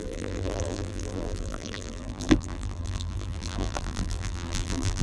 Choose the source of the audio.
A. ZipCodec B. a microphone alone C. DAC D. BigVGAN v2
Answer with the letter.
D